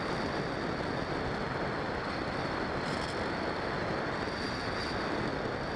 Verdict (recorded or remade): recorded